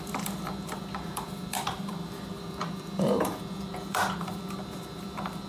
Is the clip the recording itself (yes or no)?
no